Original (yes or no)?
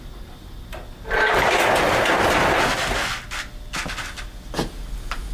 yes